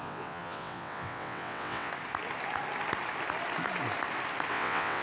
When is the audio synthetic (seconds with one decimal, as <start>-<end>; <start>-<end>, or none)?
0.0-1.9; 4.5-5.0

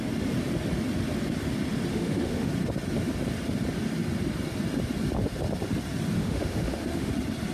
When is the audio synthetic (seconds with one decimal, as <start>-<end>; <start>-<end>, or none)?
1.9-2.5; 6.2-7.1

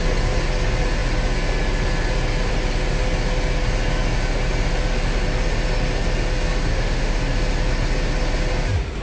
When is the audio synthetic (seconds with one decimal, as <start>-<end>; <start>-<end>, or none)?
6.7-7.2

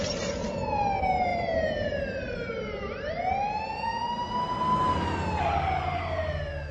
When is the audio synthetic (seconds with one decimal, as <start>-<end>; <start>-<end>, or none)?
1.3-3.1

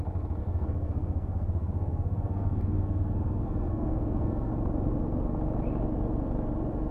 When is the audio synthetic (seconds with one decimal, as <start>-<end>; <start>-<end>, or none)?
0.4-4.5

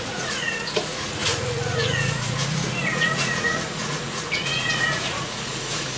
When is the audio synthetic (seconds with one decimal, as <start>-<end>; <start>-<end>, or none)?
0.0-6.0

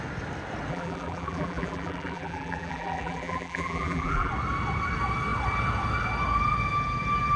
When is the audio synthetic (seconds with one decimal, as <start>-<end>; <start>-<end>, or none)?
0.7-4.3

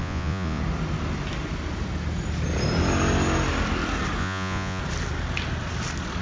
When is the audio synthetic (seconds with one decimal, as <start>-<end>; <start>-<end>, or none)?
0.0-0.6; 4.2-4.8